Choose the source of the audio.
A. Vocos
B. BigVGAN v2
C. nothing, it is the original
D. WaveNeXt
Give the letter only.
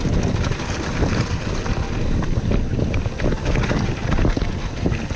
C